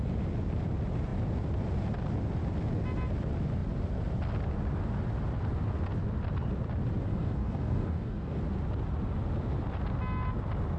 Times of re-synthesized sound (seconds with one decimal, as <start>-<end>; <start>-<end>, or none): 7.1-8.4